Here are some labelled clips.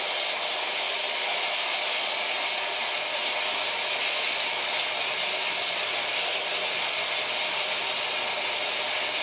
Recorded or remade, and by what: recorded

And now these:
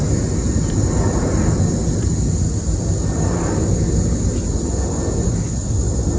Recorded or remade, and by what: recorded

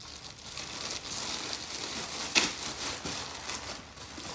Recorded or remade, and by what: recorded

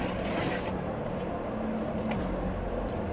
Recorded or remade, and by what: recorded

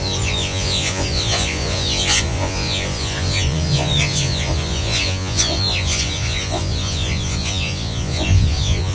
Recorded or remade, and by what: remade, vocoder, Vocos